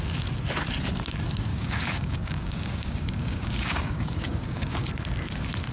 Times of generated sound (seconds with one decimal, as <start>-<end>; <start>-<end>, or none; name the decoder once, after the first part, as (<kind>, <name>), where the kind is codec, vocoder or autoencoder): 1.5-4.9 (codec, DAC)